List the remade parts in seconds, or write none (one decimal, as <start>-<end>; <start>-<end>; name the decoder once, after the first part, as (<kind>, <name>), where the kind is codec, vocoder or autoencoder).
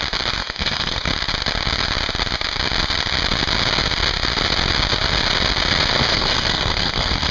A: 0.4-1.1 (codec, SNAC); 6.1-7.3